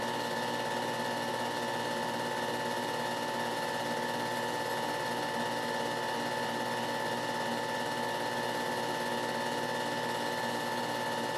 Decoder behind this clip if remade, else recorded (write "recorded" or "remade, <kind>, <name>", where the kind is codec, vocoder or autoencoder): recorded